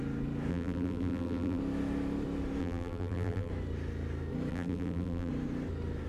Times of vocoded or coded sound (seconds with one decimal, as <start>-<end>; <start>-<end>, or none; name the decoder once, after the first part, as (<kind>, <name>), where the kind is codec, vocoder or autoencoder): 0.5-1.6 (vocoder, BigVGAN v2); 2.6-3.5; 4.5-5.3